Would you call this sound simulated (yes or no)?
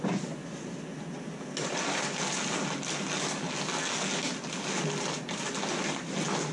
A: no